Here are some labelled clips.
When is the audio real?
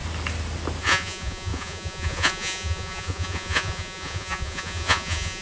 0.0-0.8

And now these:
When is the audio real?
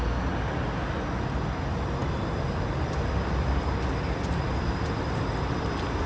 0.0-6.1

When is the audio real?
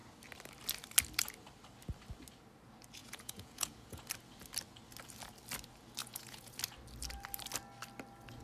0.0-3.0; 4.0-6.0; 6.6-8.4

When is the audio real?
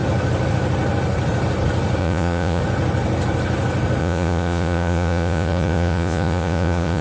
0.0-2.0; 2.6-4.0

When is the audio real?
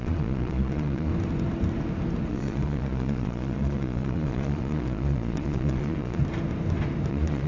1.1-2.3; 6.2-7.1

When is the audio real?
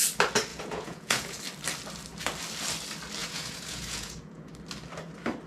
0.0-0.5; 1.4-3.2; 4.5-5.5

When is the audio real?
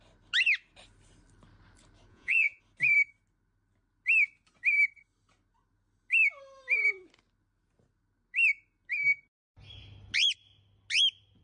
0.0-2.1; 2.6-11.4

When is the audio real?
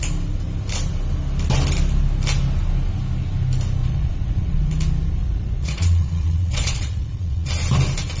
0.0-3.8; 4.7-5.2; 7.5-8.2